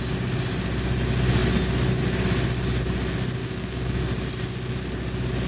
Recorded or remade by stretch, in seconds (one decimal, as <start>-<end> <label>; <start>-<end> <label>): 0.0-3.4 recorded; 3.4-4.0 remade; 4.0-5.5 recorded

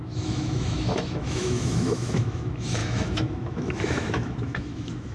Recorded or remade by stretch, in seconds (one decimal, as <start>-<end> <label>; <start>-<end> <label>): 0.0-5.1 remade

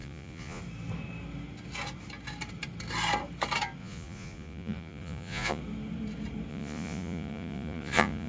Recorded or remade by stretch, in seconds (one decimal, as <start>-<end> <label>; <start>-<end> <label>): 0.0-0.6 remade; 0.6-3.8 recorded; 3.8-5.6 remade; 5.6-6.5 recorded; 6.5-8.3 remade

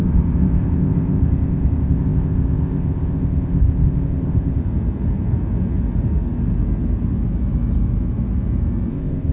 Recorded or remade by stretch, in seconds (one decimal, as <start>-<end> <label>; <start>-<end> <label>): 0.0-4.6 remade; 4.6-8.9 recorded; 8.9-9.3 remade

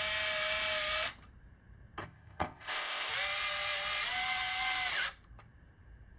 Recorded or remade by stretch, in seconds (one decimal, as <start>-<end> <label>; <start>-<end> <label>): 0.0-2.0 recorded; 2.0-3.1 remade; 3.1-6.2 recorded

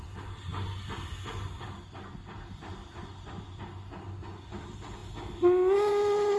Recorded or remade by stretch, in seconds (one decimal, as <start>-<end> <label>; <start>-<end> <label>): 0.0-6.4 recorded

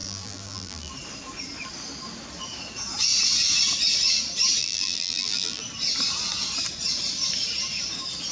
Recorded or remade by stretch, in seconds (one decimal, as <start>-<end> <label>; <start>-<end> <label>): 0.0-0.9 remade; 0.9-4.6 recorded; 4.6-5.6 remade; 5.6-8.3 recorded